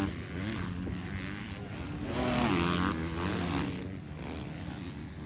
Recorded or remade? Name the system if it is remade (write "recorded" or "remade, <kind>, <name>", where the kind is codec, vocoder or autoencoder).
recorded